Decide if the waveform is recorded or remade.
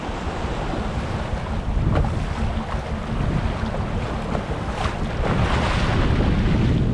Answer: recorded